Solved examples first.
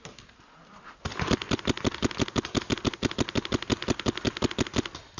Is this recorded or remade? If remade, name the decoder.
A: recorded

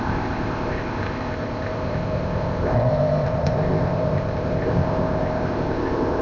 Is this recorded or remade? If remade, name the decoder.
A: remade, codec, ZipCodec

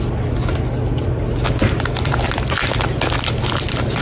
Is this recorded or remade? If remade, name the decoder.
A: recorded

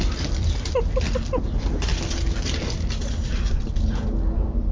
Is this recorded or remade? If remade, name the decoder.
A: recorded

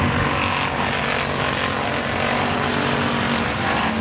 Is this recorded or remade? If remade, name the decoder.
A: recorded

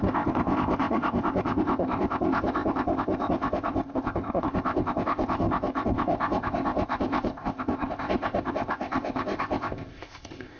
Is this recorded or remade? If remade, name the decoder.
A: remade, codec, ZipCodec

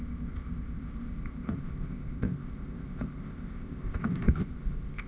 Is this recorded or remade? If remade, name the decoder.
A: remade, codec, ZipCodec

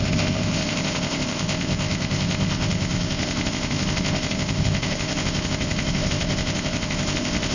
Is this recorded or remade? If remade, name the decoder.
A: remade, codec, ZipCodec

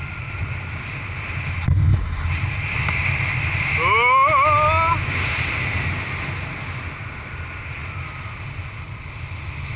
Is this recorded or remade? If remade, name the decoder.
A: recorded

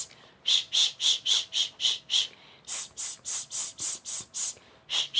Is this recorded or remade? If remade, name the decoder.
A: recorded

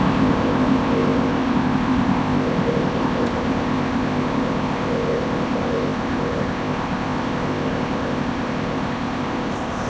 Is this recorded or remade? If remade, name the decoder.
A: remade, codec, ZipCodec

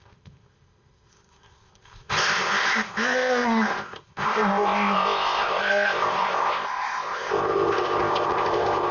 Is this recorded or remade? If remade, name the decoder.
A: remade, codec, ZipCodec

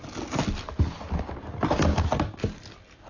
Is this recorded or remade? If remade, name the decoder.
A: recorded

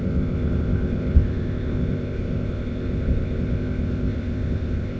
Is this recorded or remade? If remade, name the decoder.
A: remade, codec, ZipCodec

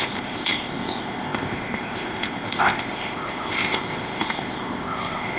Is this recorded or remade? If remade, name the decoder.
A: remade, codec, ZipCodec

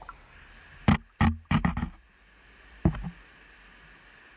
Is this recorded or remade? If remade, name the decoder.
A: recorded